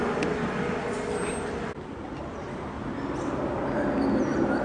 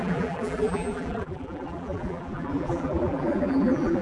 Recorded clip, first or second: first